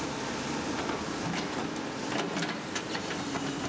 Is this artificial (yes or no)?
no